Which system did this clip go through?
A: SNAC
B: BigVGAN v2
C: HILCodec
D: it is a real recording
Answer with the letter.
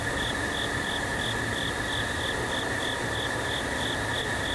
D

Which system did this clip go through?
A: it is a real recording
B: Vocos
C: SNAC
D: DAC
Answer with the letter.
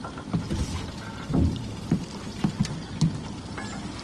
A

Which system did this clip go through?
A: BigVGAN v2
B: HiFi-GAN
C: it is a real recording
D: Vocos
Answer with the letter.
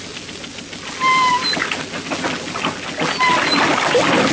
C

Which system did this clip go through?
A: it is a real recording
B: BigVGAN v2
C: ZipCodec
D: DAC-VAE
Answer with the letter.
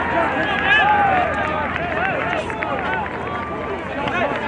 A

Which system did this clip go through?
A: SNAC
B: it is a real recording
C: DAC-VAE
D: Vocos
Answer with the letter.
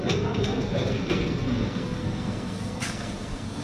A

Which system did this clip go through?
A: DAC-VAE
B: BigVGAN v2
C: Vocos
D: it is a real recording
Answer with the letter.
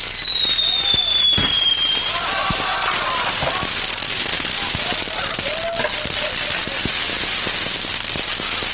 D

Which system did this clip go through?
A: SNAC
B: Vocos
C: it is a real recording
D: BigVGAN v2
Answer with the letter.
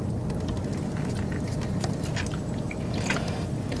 C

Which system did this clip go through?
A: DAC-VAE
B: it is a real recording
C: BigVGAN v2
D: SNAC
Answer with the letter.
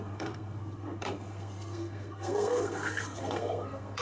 D